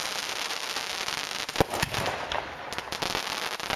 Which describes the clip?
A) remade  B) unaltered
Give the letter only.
B